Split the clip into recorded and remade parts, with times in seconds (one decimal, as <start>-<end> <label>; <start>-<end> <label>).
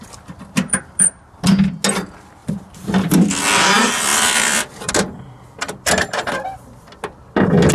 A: 0.0-2.4 recorded; 2.4-3.4 remade; 3.4-4.1 recorded; 4.1-4.9 remade; 4.9-7.7 recorded